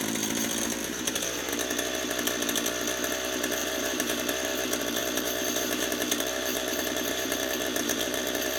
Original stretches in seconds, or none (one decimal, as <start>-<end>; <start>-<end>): 0.0-0.8; 1.5-3.6; 4.2-5.0